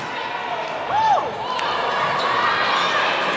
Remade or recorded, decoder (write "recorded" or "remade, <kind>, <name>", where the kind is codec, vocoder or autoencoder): recorded